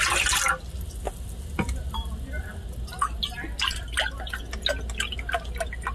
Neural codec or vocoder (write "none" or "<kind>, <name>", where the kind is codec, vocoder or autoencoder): none